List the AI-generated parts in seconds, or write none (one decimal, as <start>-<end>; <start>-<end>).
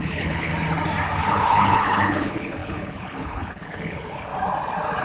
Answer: 0.0-0.5; 1.2-4.3